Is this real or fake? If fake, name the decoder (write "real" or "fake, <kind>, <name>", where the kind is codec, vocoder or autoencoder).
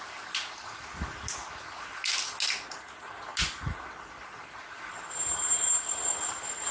real